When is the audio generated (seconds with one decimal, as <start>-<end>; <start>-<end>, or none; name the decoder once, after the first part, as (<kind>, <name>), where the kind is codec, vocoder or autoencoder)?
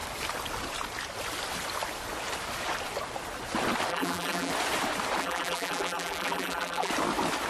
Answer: 3.9-4.5 (vocoder, BigVGAN v2); 5.2-6.9